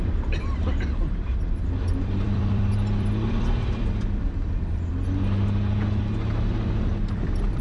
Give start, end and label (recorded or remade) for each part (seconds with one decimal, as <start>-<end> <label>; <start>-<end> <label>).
0.0-4.9 remade; 4.9-7.1 recorded; 7.1-7.6 remade